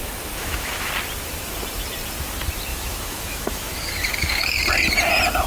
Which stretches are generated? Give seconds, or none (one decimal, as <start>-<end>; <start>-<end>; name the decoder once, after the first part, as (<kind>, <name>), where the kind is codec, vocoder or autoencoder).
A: 0.0-0.9 (autoencoder, DAC-VAE); 2.7-4.6